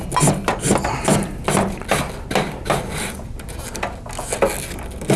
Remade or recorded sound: recorded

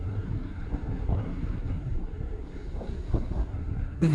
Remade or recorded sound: remade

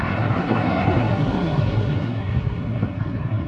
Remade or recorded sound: remade